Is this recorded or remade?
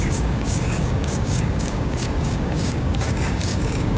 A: remade